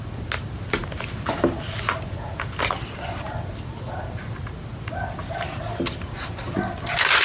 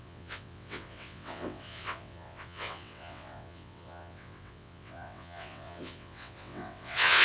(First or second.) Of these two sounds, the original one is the first